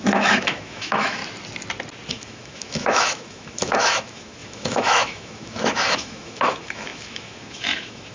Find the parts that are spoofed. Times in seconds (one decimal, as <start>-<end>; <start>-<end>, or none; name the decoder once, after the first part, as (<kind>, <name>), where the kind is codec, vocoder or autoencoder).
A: 0.0-1.2 (autoencoder, DAC-VAE); 2.1-8.1